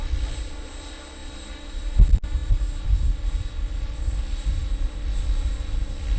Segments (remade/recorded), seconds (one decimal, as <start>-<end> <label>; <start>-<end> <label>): 0.0-6.2 recorded